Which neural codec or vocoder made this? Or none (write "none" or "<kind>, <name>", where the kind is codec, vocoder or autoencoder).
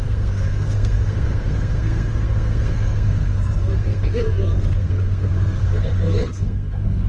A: codec, SNAC